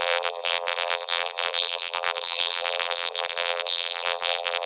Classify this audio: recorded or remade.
remade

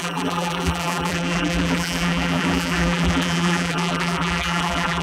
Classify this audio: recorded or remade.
remade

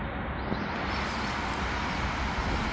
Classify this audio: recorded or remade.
recorded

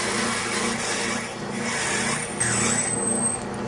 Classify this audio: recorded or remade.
recorded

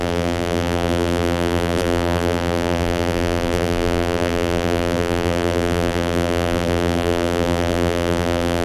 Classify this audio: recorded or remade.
remade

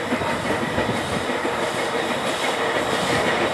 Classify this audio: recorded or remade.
remade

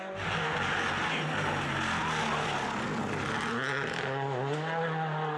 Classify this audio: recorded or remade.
recorded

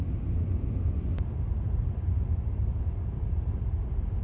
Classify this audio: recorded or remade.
recorded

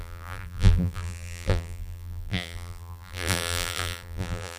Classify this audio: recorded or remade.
remade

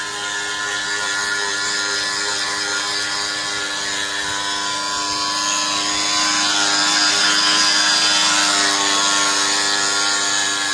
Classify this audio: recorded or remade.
recorded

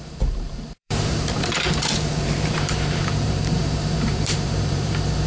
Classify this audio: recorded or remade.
remade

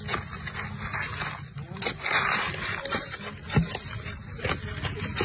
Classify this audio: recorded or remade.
recorded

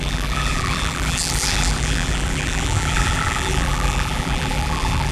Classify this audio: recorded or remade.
remade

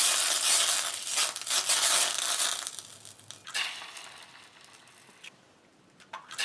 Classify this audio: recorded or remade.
recorded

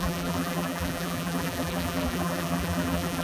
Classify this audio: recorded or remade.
remade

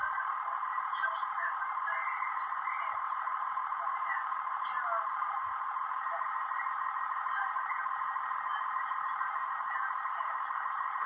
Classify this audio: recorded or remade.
remade